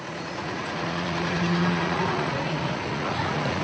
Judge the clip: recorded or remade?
remade